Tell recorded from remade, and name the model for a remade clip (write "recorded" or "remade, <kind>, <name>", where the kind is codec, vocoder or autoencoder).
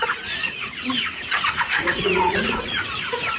remade, vocoder, Vocos